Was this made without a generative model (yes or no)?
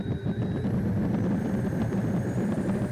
no